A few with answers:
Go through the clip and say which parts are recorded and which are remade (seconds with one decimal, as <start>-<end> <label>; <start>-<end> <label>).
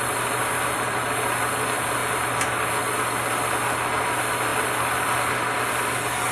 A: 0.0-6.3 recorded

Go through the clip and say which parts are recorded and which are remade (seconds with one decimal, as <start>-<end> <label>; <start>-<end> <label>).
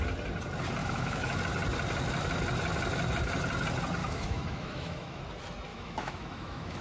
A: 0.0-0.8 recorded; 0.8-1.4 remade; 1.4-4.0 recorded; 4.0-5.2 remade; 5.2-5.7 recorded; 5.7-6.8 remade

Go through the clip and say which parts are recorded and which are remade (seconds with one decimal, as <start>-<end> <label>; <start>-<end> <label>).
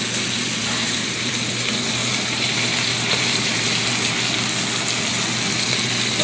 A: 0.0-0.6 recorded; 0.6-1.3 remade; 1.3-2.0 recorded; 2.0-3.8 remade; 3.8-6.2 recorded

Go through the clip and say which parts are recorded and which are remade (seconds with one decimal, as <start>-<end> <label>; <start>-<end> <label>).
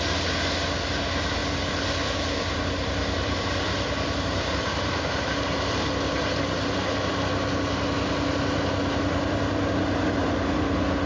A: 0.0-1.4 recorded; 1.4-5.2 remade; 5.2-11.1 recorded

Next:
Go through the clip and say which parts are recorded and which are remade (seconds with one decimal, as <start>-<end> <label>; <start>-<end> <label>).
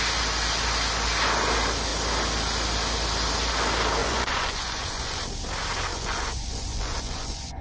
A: 0.0-4.0 recorded; 4.0-5.2 remade; 5.2-5.9 recorded; 5.9-7.6 remade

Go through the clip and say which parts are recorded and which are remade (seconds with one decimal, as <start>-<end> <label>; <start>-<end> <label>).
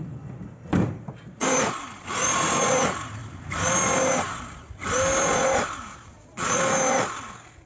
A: 0.0-5.9 recorded; 5.9-6.6 remade; 6.6-7.7 recorded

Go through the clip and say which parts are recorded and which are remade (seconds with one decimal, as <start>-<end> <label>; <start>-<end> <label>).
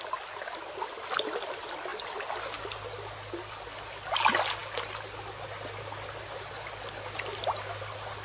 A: 0.0-8.2 recorded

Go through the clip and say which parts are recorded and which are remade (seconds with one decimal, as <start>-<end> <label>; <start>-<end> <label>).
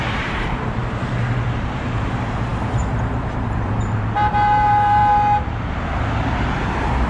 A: 0.0-0.8 remade; 0.8-1.6 recorded; 1.6-5.0 remade; 5.0-7.1 recorded